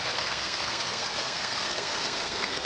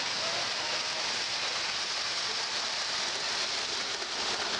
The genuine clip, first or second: second